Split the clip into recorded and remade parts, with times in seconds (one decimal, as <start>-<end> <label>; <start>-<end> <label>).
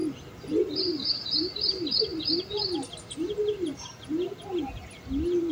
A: 0.0-5.5 recorded